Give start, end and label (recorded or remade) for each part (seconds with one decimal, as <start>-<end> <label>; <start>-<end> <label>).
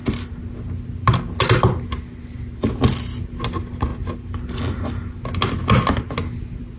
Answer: 0.0-6.8 recorded